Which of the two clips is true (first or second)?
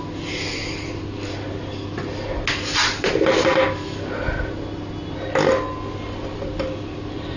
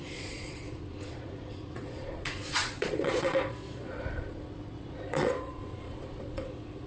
first